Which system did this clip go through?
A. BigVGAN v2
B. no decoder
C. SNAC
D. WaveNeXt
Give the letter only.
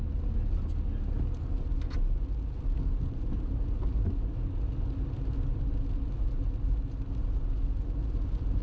B